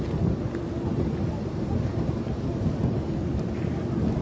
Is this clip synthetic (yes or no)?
no